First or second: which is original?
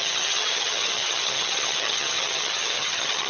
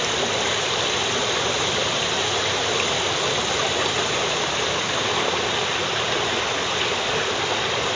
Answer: second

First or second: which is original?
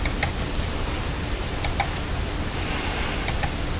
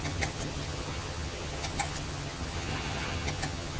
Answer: first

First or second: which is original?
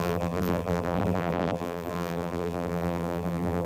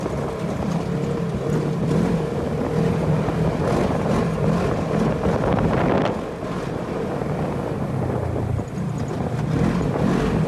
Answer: second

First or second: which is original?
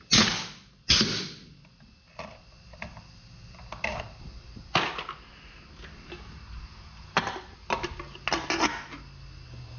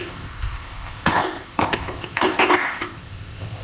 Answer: first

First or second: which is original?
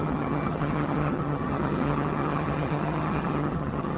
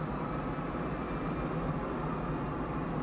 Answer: second